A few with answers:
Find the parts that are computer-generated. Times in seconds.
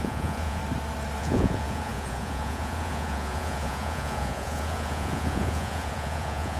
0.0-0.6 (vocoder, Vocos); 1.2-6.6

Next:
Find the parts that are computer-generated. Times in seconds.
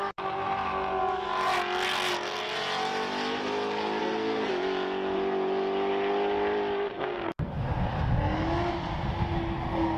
4.0-4.5 (codec, SNAC); 6.9-7.6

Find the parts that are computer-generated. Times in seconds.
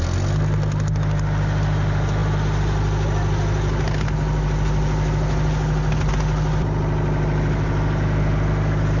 none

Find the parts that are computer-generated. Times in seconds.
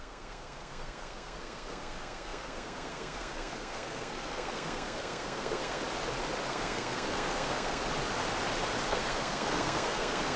0.0-5.8 (codec, SNAC); 6.5-7.8; 8.9-10.4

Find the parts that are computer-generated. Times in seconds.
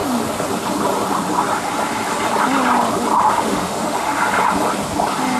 3.2-4.2 (autoencoder, DAC-VAE)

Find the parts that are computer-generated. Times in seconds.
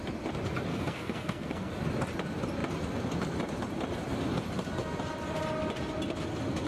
0.7-1.7 (codec, SNAC)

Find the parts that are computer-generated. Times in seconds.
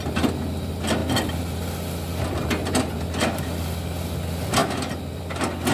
none